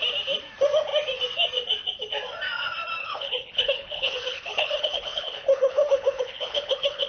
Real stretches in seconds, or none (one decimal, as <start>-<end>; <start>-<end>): 0.0-3.0